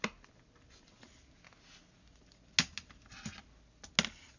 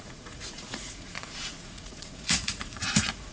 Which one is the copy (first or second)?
second